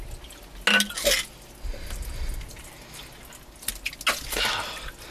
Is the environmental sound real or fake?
real